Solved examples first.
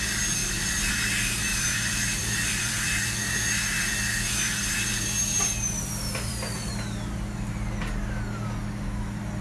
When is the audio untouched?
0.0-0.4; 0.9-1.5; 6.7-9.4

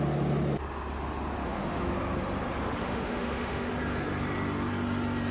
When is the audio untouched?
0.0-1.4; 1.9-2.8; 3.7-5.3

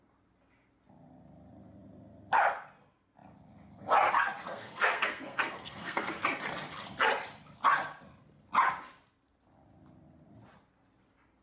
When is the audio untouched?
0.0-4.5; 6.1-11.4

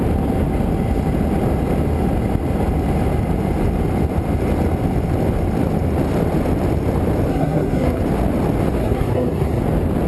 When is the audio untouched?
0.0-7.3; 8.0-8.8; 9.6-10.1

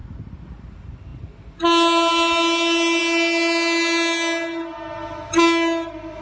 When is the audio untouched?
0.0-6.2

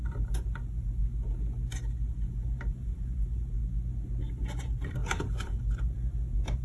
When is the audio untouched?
1.0-2.1; 3.6-4.2

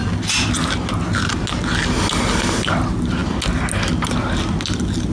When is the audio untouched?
0.0-5.1